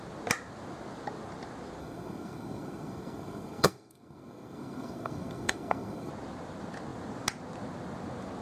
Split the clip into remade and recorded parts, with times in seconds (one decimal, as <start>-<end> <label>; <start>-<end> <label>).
0.0-1.8 recorded; 1.8-6.1 remade; 6.1-8.4 recorded